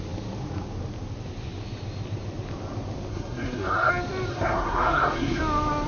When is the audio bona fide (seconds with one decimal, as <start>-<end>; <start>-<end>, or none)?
0.0-3.1; 3.9-4.3; 5.4-5.9